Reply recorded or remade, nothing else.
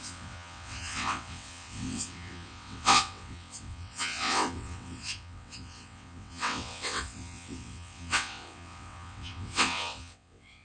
remade